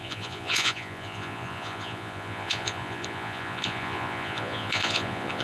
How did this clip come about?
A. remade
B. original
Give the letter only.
A